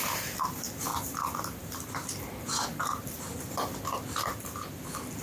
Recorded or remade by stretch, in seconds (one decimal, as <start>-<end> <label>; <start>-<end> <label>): 0.0-5.2 recorded